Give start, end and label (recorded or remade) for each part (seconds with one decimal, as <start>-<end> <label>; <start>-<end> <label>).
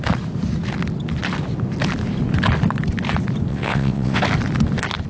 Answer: 0.0-3.5 recorded; 3.5-4.2 remade; 4.2-5.1 recorded